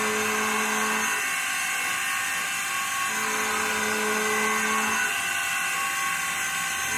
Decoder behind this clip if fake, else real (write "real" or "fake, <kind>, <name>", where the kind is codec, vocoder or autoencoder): real